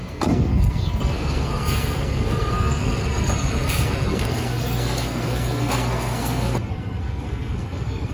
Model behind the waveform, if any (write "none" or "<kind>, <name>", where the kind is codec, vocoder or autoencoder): codec, SNAC